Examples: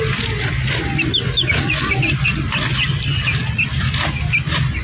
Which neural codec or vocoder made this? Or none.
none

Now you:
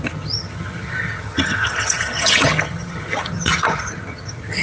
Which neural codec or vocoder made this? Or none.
vocoder, HiFi-GAN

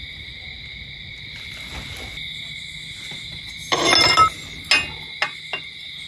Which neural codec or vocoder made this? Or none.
none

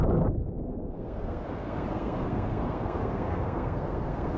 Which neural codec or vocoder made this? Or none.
codec, SNAC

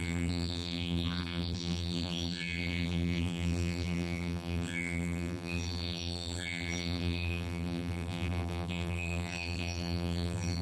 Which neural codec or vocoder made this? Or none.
vocoder, BigVGAN v2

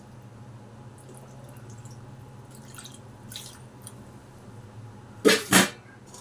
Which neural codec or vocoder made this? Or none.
none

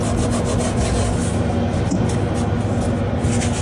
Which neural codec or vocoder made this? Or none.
none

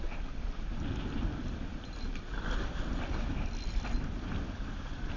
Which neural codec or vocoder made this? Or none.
none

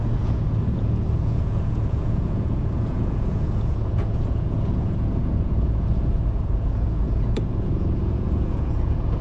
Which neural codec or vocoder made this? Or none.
vocoder, Vocos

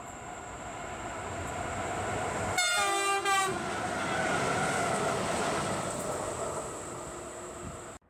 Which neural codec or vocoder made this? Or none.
none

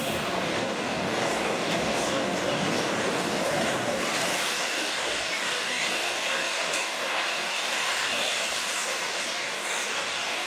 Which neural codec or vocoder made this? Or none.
codec, DAC